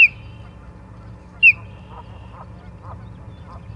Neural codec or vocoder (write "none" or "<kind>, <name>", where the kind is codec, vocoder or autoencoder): none